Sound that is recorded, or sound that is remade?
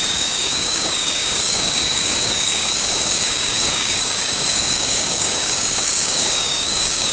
remade